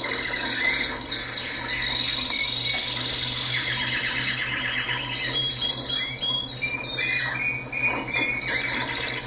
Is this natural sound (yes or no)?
yes